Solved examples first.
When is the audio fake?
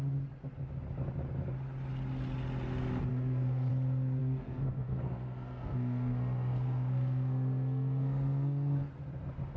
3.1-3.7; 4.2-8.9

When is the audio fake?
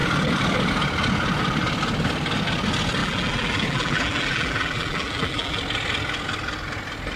3.0-5.6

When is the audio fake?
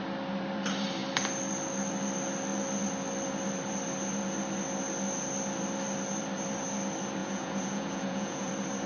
7.2-8.5